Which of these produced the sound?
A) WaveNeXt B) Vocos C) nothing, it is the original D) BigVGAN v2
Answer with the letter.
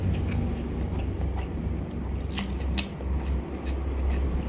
C